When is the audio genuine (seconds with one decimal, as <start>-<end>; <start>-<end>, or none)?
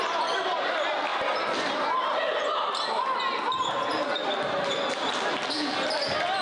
0.0-6.4